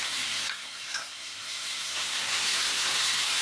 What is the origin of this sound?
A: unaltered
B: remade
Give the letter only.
B